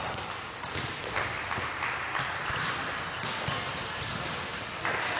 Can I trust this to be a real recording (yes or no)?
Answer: yes